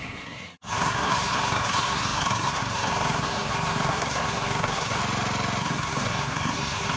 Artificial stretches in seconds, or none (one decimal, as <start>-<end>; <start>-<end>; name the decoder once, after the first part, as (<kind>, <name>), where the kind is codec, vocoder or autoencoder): 0.0-5.0 (codec, SNAC); 5.6-7.0